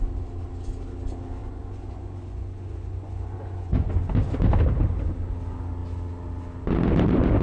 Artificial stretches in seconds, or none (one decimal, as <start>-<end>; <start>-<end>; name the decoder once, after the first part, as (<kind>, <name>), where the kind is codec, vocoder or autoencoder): 1.4-3.9 (vocoder, Vocos)